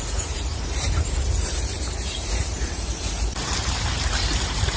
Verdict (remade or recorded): remade